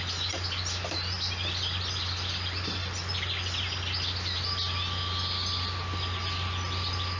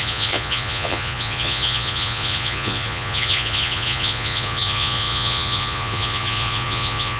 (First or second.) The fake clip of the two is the second